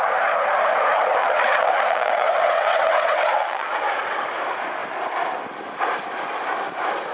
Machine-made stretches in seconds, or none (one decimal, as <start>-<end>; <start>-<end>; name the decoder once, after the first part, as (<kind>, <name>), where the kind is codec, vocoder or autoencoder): 1.2-3.7 (vocoder, WaveNeXt)